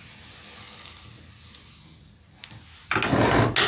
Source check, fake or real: real